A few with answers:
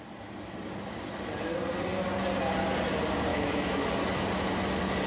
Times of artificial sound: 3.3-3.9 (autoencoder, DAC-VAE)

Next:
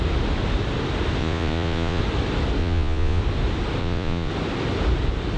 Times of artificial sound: 1.2-2.0 (vocoder, Vocos); 2.6-3.2; 3.8-4.3

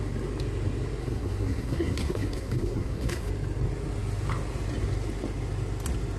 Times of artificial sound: 1.0-3.3 (codec, SNAC)

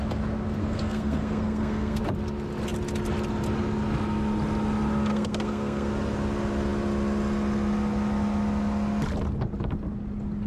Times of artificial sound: 0.6-2.0 (codec, SNAC); 5.1-5.9

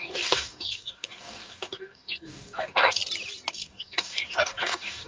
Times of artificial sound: 0.0-3.0 (codec, DAC); 3.5-5.1